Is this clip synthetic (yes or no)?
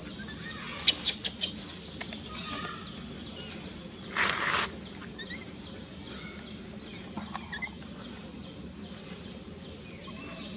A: no